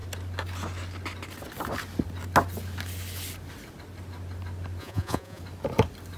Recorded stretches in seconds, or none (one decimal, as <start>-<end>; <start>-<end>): 0.0-4.8; 5.4-6.2